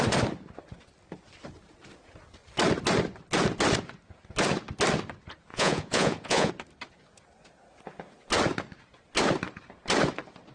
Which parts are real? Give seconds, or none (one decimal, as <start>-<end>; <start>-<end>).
0.0-5.5; 6.5-10.5